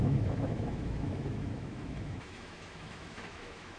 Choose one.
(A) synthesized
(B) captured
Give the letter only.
A